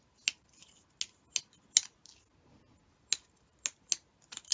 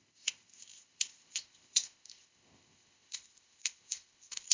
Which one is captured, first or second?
first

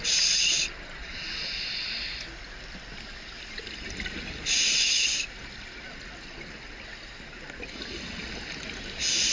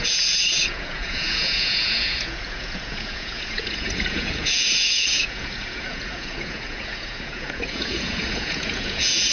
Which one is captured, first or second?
first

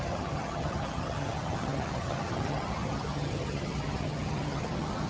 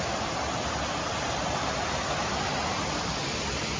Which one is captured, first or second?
second